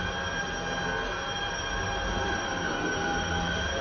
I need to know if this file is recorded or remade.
recorded